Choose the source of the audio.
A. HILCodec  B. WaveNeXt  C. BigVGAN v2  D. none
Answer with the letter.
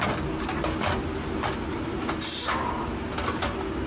D